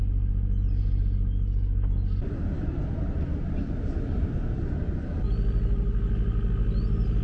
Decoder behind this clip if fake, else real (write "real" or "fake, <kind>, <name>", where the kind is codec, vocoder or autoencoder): real